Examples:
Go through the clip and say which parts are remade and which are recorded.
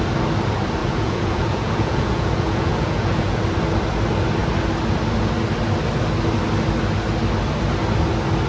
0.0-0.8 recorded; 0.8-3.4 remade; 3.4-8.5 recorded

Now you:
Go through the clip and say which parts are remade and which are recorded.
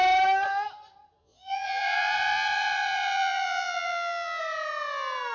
0.0-1.2 recorded; 1.2-4.4 remade; 4.4-5.3 recorded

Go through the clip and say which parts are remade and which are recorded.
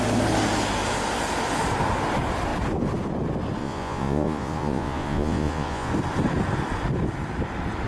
0.0-3.6 recorded; 3.6-5.9 remade; 5.9-7.9 recorded